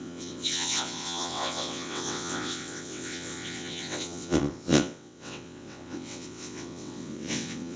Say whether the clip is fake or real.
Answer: fake